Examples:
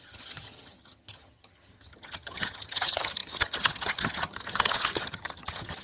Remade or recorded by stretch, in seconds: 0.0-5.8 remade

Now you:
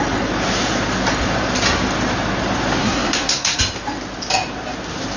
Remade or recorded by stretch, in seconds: 0.0-2.8 recorded; 2.8-3.6 remade; 3.6-5.2 recorded

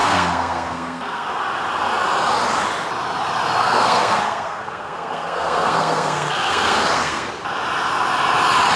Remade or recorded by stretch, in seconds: 0.0-1.3 remade; 1.3-3.6 recorded; 3.6-7.3 remade; 7.3-8.8 recorded

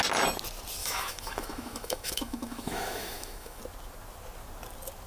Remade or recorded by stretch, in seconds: 0.0-0.8 recorded; 0.8-3.6 remade; 3.6-5.1 recorded

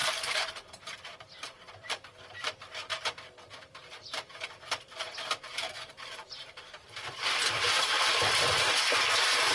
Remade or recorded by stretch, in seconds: 0.0-2.8 remade; 2.8-3.9 recorded; 3.9-9.5 remade

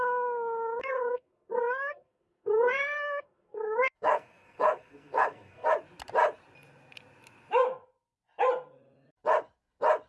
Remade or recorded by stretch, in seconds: 0.0-0.8 recorded; 0.8-5.7 remade; 5.7-10.1 recorded

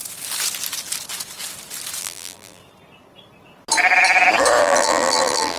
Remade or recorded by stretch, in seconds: 0.0-2.0 recorded; 2.0-2.6 remade; 2.6-4.6 recorded; 4.6-5.6 remade

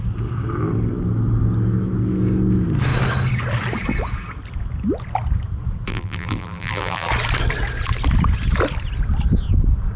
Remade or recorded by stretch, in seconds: 0.0-5.9 recorded; 5.9-7.1 remade; 7.1-10.0 recorded